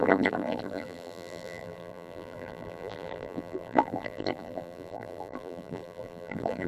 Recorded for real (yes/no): no